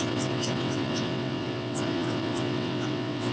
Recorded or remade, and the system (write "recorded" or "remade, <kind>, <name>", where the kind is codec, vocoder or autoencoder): remade, vocoder, WaveNeXt